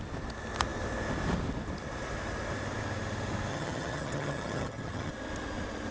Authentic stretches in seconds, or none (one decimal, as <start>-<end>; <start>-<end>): 0.0-3.5; 5.1-5.9